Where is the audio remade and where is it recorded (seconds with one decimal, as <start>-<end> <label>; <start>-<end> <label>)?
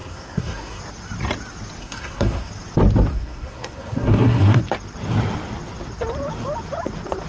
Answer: 0.0-0.8 remade; 0.8-1.8 recorded; 1.8-2.5 remade; 2.5-3.1 recorded; 3.1-4.6 remade; 4.6-7.3 recorded